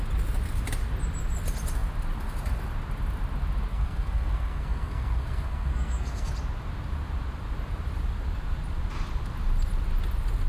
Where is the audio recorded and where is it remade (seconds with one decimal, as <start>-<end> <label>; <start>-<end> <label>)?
0.0-3.7 recorded; 3.7-6.3 remade; 6.3-10.5 recorded